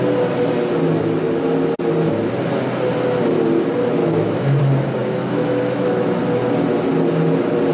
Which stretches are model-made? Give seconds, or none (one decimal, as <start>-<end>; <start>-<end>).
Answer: 4.0-4.6; 5.0-6.2